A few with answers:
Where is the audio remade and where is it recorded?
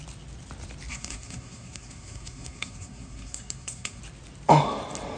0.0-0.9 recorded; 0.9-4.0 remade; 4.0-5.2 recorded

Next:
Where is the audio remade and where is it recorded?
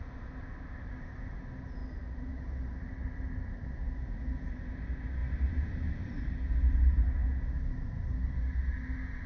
0.0-1.8 recorded; 1.8-3.2 remade; 3.2-5.2 recorded; 5.2-6.3 remade; 6.3-9.3 recorded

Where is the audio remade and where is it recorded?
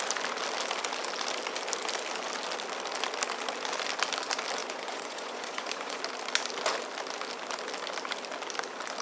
0.0-4.6 recorded; 4.6-6.0 remade; 6.0-9.0 recorded